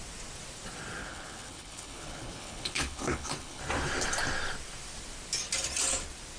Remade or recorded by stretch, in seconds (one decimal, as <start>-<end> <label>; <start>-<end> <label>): 0.0-1.0 recorded; 1.0-3.6 remade; 3.6-6.4 recorded